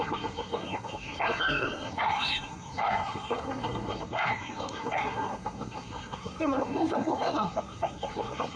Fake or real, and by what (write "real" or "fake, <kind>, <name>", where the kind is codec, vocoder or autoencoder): fake, codec, SNAC